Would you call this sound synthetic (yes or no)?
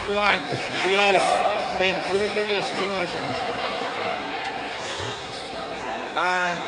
yes